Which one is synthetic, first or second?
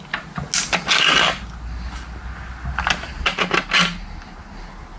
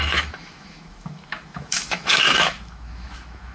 second